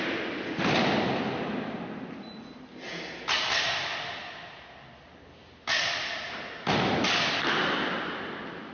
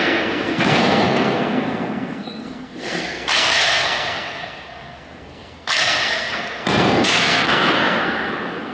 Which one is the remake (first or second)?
second